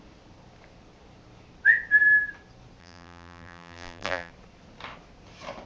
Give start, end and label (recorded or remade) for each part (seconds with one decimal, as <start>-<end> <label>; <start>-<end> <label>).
0.0-2.8 recorded; 2.8-4.3 remade; 4.3-5.7 recorded